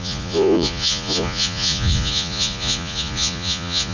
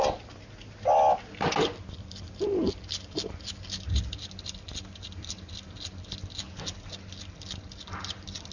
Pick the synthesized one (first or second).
first